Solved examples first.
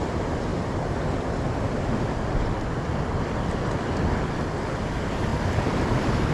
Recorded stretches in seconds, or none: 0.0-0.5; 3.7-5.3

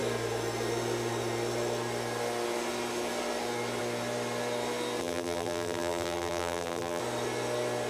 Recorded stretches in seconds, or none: 0.0-5.0; 7.0-7.9

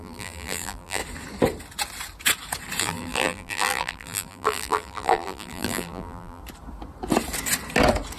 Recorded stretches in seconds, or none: 1.0-2.8; 6.4-8.2

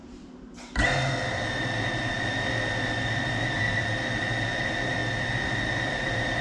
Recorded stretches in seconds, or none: 5.0-5.7

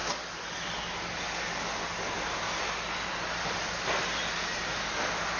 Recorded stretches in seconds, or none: 0.0-5.4